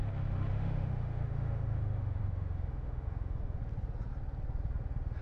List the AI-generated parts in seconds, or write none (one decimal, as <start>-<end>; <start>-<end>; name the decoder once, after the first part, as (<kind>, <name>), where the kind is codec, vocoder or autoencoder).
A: 0.5-3.6 (autoencoder, DAC-VAE)